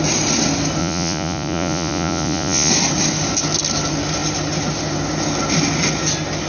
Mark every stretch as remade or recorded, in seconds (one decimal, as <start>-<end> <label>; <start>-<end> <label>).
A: 0.0-0.8 recorded; 0.8-2.7 remade; 2.7-6.5 recorded